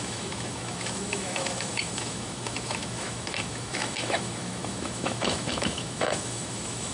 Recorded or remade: remade